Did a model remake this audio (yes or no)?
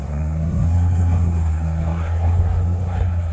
yes